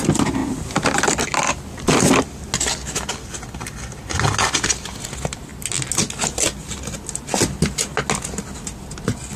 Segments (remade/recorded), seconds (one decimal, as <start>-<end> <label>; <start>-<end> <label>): 0.0-9.4 recorded